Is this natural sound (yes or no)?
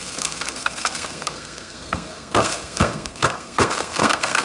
no